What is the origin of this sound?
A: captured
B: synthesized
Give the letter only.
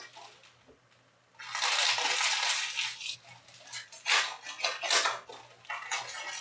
A